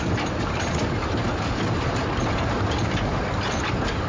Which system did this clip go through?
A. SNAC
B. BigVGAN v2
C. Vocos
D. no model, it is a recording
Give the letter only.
D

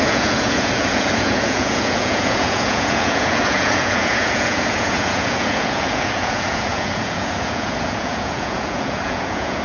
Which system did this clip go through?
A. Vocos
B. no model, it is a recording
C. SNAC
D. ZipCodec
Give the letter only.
A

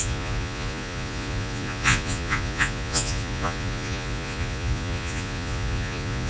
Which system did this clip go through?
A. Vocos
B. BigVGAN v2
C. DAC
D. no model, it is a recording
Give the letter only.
A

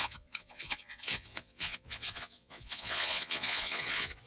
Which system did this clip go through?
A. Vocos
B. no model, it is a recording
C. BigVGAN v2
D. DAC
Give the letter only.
A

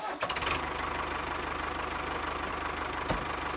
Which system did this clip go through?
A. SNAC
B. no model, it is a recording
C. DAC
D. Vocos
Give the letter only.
B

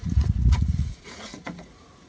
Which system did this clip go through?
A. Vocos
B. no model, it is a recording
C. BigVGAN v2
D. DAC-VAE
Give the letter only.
A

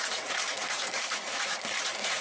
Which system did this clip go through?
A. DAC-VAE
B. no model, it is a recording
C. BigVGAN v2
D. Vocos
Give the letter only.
D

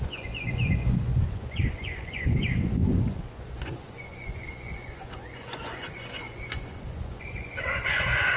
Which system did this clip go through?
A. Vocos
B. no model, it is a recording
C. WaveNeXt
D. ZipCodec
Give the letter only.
A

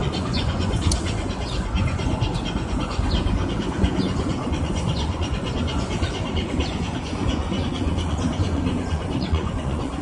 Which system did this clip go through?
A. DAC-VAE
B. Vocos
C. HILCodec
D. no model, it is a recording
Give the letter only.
B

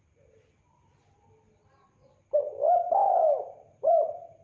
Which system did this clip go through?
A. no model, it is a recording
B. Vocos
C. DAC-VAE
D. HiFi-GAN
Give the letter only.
A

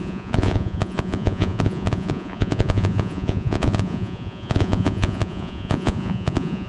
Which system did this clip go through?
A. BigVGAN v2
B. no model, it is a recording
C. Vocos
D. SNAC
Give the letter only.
C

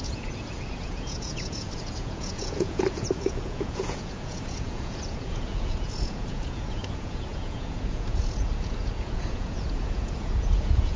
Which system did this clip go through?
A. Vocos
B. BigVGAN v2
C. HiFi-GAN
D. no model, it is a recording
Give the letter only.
A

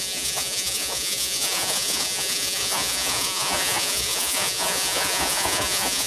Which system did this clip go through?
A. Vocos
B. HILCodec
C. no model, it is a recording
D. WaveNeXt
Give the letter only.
A